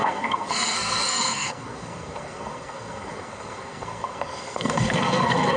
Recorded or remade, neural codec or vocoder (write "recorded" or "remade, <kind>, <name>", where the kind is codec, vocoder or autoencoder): remade, codec, SNAC